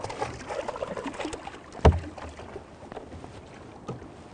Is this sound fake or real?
real